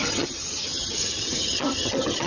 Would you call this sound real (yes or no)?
no